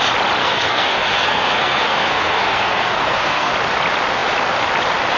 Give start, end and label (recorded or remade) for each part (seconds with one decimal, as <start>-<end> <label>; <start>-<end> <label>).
0.0-0.4 recorded; 0.4-3.5 remade; 3.5-5.2 recorded